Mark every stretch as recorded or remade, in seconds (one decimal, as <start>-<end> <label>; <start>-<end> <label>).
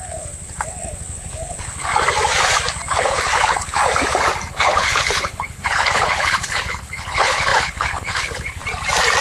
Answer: 0.0-1.9 remade; 1.9-2.9 recorded; 2.9-3.8 remade; 3.8-4.5 recorded; 4.5-8.6 remade; 8.6-9.2 recorded